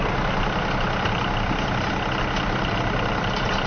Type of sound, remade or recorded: recorded